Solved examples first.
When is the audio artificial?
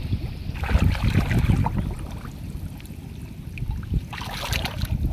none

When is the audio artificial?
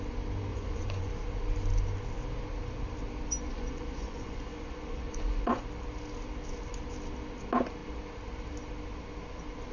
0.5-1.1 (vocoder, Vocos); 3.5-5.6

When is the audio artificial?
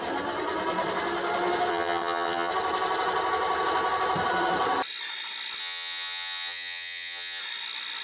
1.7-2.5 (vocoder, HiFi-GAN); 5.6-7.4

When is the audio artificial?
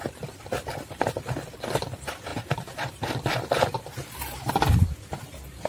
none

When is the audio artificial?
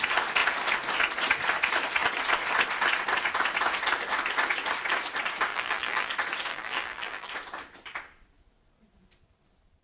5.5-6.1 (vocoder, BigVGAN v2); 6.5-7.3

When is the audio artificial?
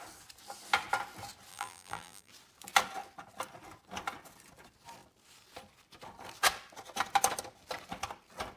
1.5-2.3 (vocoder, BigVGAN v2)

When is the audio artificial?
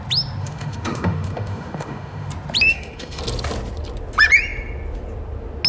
0.4-2.3 (autoencoder, DAC-VAE); 2.7-3.2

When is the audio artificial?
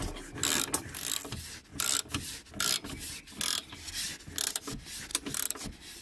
5.1-6.0 (vocoder, BigVGAN v2)